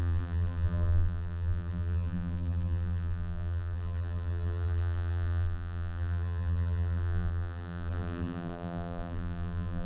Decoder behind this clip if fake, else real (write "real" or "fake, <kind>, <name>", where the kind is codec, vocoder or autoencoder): fake, vocoder, BigVGAN v2